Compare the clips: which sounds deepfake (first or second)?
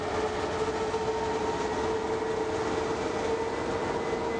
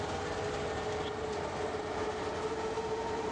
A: second